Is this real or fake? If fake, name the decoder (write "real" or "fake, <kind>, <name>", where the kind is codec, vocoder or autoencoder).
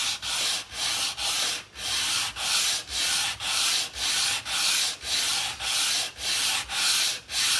real